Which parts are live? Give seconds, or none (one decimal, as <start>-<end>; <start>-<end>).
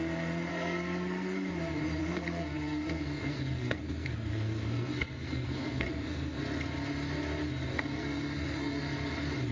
0.0-0.5; 1.5-2.0; 6.4-7.7; 8.8-9.5